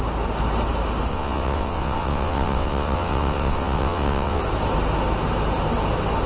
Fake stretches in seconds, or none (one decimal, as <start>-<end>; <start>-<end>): 1.1-4.4

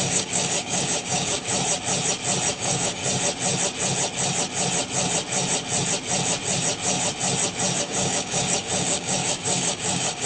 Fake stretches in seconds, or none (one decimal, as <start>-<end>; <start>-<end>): 0.0-1.5; 2.5-3.0; 7.8-10.3

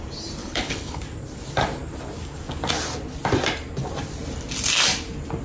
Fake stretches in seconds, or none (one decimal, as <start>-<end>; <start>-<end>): 0.4-1.0

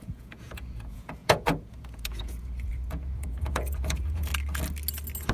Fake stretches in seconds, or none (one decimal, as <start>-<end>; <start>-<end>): 0.0-4.3

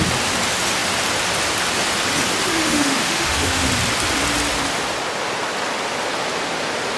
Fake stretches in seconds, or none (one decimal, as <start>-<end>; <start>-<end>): 2.5-3.7